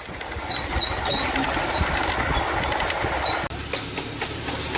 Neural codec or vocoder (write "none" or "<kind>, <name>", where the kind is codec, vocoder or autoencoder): none